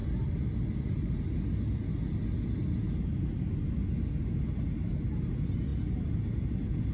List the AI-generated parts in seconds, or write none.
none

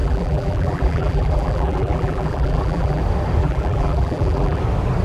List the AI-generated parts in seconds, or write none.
0.0-3.0 (vocoder, BigVGAN v2); 3.4-4.6

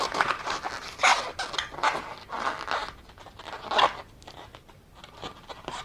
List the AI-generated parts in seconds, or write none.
0.0-1.1 (vocoder, BigVGAN v2); 4.1-5.8